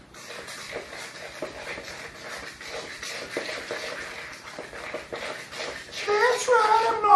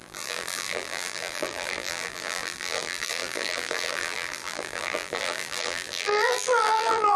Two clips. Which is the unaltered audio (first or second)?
first